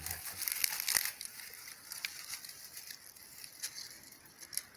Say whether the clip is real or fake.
real